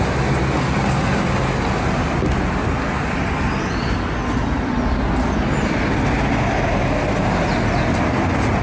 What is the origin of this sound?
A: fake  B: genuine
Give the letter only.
B